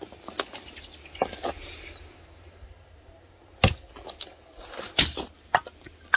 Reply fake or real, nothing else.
real